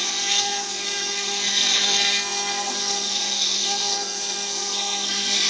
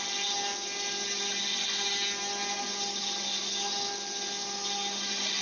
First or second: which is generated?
first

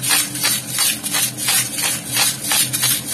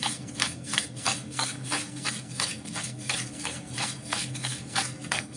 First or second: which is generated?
second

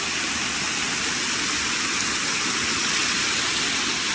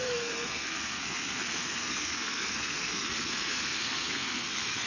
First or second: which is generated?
second